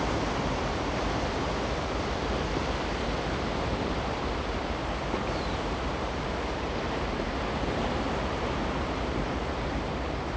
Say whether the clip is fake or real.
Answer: fake